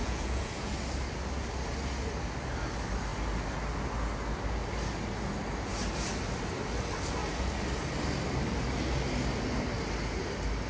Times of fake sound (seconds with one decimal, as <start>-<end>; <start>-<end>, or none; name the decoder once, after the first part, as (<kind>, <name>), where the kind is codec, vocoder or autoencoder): 0.0-0.7 (vocoder, Vocos)